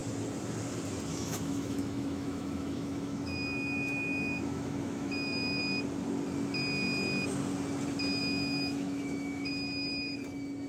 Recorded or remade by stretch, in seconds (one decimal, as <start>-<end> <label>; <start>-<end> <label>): 0.0-1.1 recorded; 1.1-5.6 remade; 5.6-8.2 recorded; 8.2-9.5 remade; 9.5-10.7 recorded